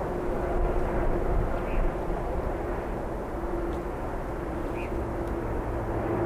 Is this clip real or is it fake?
real